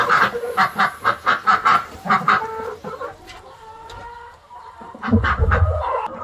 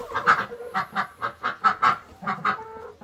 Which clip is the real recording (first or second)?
second